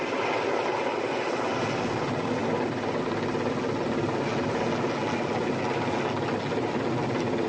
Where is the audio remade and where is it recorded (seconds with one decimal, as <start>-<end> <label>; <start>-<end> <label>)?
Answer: 0.0-7.5 recorded